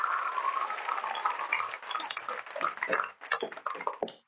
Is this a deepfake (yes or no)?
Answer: no